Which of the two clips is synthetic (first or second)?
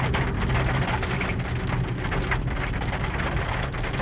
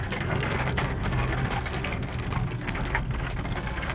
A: second